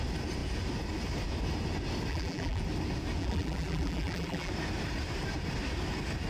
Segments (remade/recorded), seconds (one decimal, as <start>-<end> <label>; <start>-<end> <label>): 0.0-2.1 recorded; 2.1-2.6 remade; 2.6-3.2 recorded; 3.2-4.5 remade; 4.5-6.3 recorded